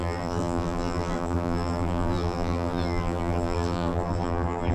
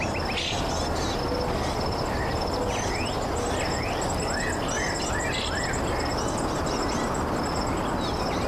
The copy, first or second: first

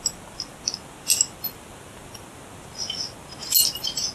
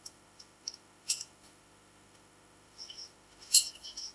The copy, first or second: second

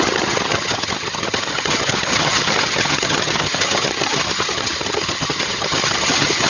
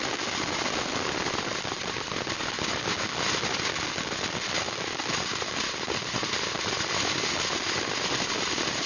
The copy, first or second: first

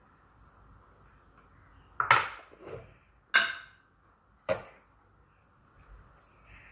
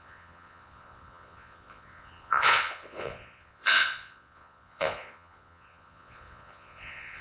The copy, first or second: second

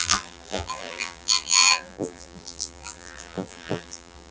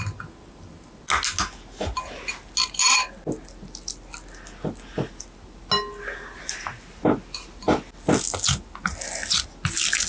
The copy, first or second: first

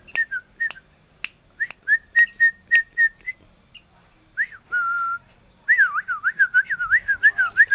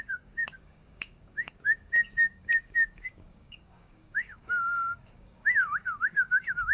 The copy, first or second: second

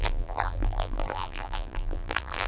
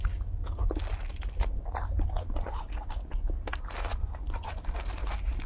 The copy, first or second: first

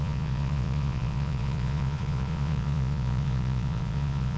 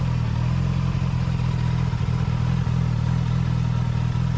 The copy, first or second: first